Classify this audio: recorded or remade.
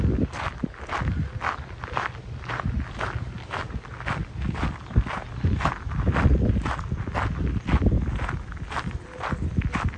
recorded